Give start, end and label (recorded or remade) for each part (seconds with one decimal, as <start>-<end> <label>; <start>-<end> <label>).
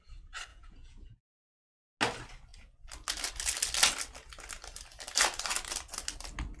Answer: 0.0-0.5 recorded; 0.5-1.2 remade; 1.2-6.6 recorded